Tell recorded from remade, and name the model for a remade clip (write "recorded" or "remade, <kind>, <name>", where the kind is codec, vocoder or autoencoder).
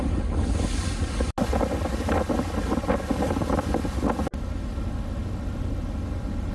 recorded